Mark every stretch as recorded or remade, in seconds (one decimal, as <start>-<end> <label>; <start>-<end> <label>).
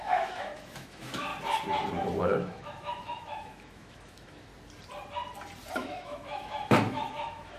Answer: 0.0-1.3 remade; 1.3-2.2 recorded; 2.2-4.5 remade; 4.5-5.7 recorded; 5.7-7.6 remade